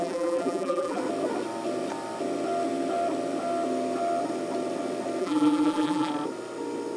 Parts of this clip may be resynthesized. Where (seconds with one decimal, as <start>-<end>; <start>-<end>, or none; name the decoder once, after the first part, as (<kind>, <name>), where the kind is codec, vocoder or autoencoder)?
0.0-1.0 (vocoder, BigVGAN v2); 5.2-6.1